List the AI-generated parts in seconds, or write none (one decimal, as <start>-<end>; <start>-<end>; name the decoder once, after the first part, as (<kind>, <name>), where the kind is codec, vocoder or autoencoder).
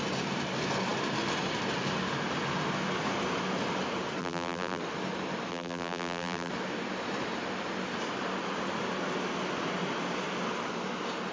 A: 4.2-4.8 (vocoder, BigVGAN v2); 5.5-6.5